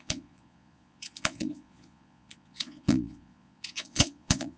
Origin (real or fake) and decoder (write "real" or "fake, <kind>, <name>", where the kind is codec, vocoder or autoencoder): fake, vocoder, Vocos